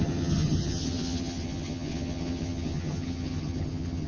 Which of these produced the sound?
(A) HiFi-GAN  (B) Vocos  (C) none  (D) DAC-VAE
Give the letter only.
A